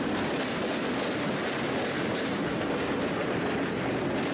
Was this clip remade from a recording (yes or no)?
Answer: no